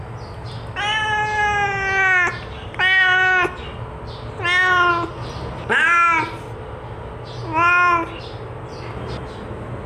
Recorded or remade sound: recorded